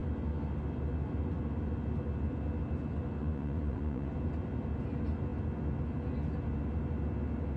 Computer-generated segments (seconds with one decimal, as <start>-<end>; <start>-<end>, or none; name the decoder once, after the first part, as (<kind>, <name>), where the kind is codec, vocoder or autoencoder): 3.2-4.1 (vocoder, Vocos)